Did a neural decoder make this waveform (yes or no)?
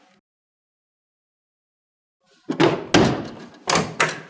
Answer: no